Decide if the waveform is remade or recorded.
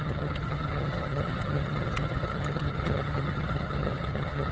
remade